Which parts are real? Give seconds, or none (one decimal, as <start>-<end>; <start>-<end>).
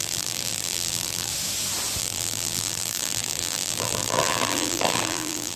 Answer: 1.3-2.0